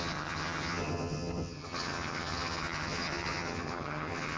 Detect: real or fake fake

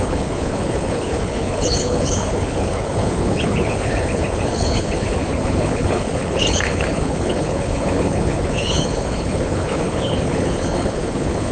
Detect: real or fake fake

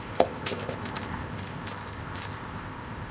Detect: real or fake fake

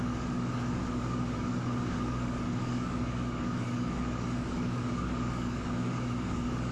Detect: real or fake fake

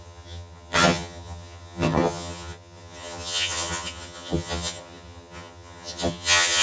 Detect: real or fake fake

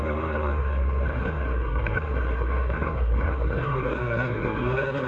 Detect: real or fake fake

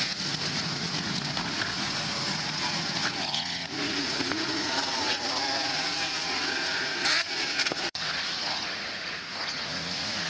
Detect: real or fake fake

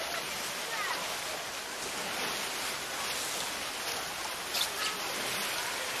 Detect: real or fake real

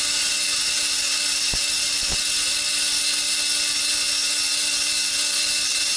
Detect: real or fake real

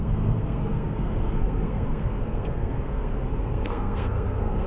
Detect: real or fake fake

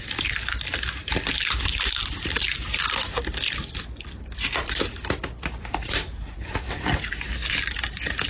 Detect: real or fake real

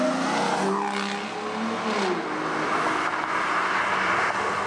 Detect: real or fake real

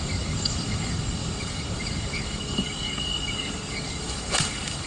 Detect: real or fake fake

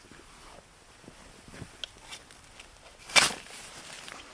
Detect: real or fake real